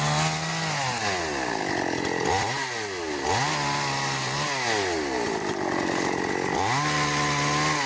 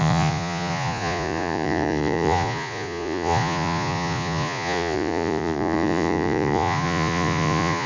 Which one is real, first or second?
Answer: first